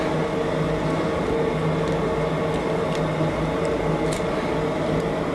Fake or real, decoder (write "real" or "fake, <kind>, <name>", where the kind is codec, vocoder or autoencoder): real